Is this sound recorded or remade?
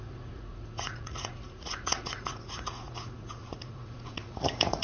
remade